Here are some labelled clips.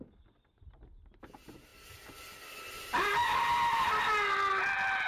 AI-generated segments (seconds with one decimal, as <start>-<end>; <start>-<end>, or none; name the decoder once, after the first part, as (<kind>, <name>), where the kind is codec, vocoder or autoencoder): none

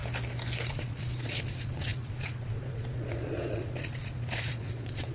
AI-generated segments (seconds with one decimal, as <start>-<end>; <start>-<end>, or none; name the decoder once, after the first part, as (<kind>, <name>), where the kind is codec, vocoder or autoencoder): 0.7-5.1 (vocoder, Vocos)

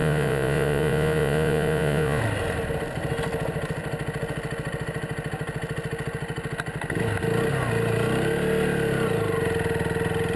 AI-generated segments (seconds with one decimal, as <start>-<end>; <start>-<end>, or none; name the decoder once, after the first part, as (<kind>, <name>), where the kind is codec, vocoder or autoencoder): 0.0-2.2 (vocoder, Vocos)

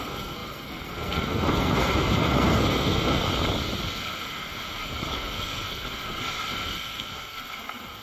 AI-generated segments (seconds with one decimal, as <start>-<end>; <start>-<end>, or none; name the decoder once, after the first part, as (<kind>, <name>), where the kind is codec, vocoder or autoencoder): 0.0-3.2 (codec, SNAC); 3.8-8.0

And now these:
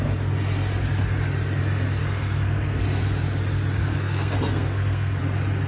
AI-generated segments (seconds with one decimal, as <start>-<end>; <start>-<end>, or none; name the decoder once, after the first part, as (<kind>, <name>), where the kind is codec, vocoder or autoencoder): 2.0-2.8 (codec, SNAC); 3.8-5.2

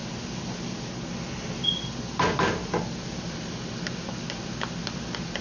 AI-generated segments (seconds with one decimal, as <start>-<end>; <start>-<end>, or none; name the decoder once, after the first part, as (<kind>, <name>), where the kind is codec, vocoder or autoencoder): none